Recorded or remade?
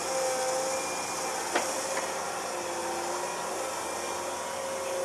recorded